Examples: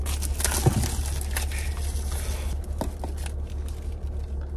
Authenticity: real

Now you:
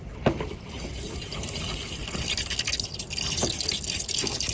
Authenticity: real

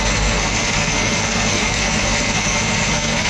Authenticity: fake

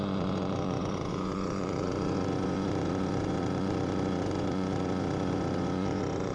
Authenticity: fake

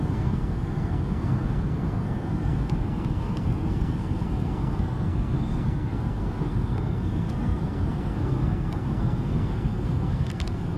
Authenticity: fake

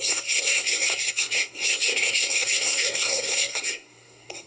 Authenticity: fake